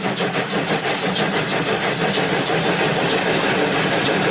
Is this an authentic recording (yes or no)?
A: yes